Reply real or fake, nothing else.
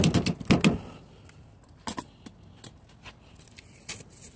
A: real